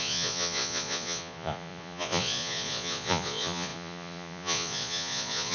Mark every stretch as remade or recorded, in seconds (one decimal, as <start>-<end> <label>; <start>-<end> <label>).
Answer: 0.0-5.5 remade